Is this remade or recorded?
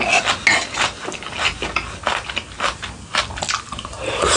recorded